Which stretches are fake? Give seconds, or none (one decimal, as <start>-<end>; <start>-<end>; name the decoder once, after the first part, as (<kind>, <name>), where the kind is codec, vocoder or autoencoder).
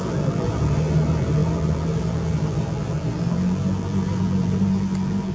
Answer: 0.0-5.3 (vocoder, BigVGAN v2)